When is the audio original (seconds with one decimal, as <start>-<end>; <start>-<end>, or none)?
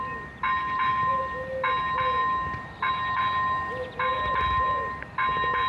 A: 0.0-5.7